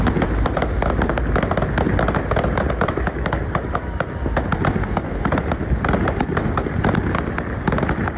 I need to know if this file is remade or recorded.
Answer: recorded